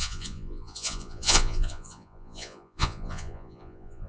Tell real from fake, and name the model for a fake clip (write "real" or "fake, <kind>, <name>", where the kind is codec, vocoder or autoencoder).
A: fake, vocoder, Vocos